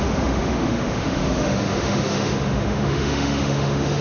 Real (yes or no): no